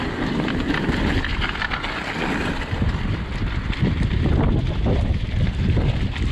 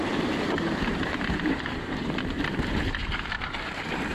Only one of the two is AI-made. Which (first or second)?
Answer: second